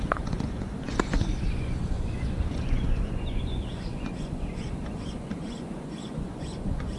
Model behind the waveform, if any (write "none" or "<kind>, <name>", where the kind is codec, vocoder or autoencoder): vocoder, Vocos